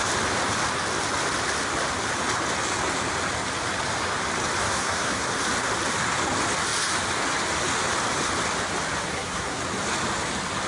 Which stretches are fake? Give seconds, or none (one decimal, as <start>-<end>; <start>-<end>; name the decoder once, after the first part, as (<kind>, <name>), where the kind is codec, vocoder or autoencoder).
4.6-5.3 (codec, SNAC); 9.1-9.6